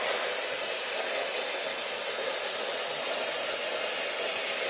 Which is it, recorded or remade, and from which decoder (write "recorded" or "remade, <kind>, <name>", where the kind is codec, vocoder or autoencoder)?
recorded